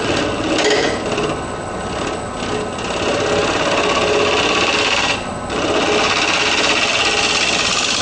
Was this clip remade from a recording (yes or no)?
no